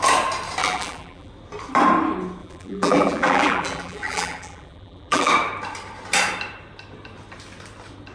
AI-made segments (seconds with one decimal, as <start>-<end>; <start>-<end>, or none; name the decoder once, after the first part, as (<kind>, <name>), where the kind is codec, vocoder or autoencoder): 0.6-1.3 (vocoder, BigVGAN v2); 2.4-5.3